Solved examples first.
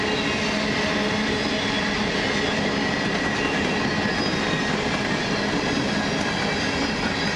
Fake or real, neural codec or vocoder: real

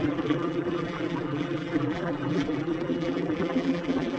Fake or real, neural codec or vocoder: fake, vocoder, BigVGAN v2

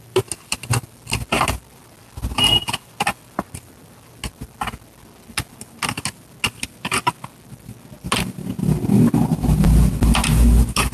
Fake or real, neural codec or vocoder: real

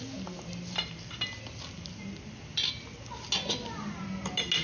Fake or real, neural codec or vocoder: real